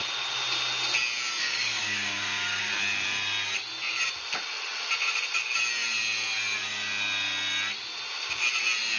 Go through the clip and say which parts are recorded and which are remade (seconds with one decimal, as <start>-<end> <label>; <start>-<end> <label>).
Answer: 0.0-1.4 recorded; 1.4-2.7 remade; 2.7-9.0 recorded